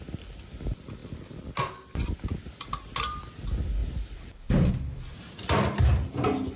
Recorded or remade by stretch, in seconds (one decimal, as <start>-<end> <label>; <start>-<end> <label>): 0.0-3.8 recorded; 3.8-4.7 remade; 4.7-6.6 recorded